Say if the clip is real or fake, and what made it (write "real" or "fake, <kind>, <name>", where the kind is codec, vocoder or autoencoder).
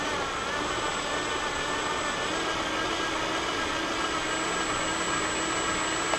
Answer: real